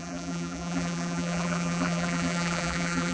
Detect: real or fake fake